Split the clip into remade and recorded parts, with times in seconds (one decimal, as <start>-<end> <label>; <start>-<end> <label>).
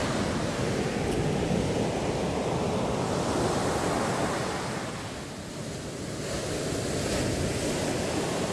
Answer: 0.0-8.5 recorded